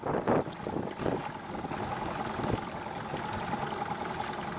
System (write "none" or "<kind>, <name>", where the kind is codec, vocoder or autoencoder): none